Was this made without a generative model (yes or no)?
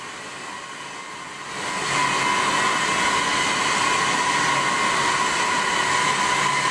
yes